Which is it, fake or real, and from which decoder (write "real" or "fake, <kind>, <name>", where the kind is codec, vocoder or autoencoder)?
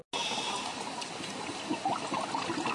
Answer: real